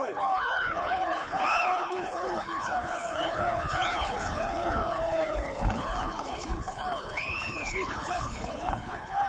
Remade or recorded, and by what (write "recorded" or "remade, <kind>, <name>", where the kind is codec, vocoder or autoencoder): remade, codec, HILCodec